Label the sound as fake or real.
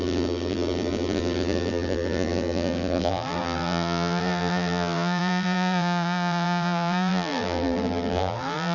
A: fake